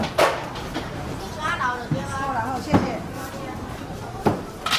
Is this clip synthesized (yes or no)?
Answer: no